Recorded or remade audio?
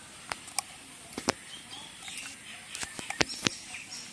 recorded